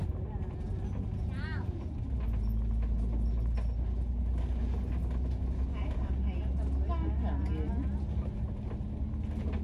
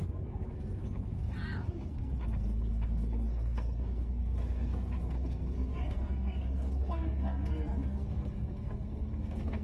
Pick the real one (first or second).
first